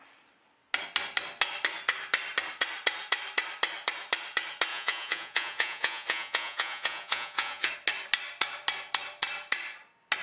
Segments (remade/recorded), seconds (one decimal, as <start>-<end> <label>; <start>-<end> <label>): 0.0-4.7 recorded; 4.7-7.7 remade; 7.7-10.2 recorded